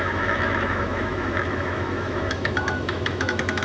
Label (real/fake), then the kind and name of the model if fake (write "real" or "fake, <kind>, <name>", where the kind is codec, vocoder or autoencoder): fake, autoencoder, DAC-VAE